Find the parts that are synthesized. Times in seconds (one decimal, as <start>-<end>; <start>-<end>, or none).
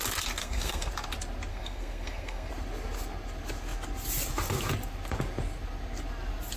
0.4-0.9; 1.5-2.5